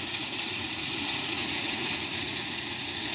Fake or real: fake